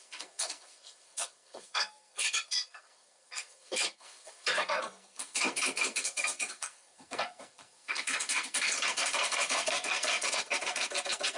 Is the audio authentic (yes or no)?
no